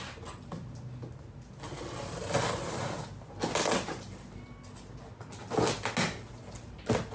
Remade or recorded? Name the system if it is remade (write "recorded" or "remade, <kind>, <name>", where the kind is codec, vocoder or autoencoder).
recorded